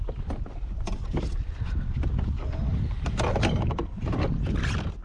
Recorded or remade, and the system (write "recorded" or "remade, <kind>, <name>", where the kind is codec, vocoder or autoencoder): recorded